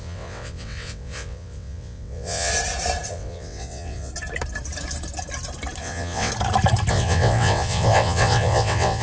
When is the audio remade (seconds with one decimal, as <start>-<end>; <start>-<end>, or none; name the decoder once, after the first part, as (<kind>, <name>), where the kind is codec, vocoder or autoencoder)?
0.0-2.5 (vocoder, WaveNeXt); 3.1-4.1; 5.8-6.3; 6.9-9.0